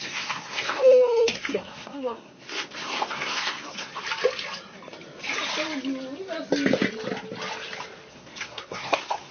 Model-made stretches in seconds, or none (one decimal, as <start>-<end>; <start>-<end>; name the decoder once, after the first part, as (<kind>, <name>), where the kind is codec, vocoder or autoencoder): 0.0-3.9 (codec, SNAC); 8.1-9.3